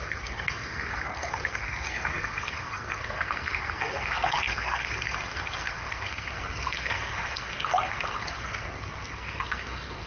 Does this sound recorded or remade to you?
remade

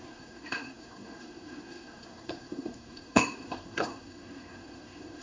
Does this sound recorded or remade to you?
remade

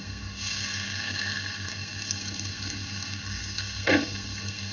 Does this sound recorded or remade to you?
remade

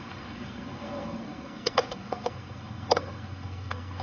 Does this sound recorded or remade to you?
remade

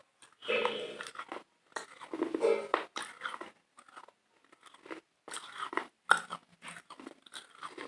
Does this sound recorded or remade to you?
recorded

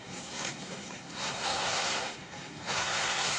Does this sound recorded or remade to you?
remade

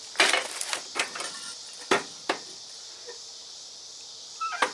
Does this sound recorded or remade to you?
recorded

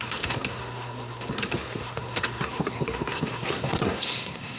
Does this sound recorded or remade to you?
remade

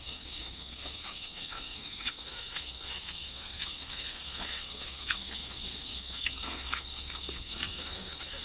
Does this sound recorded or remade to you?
remade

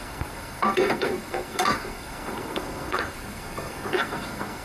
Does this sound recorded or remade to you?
remade